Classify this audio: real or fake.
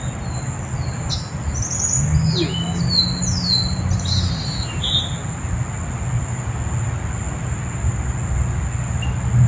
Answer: real